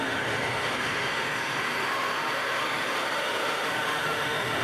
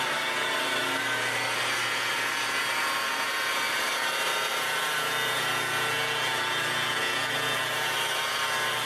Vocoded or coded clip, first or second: first